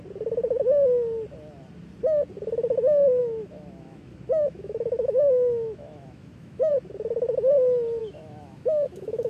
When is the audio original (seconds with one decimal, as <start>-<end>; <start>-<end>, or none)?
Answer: 0.0-3.2; 6.7-8.0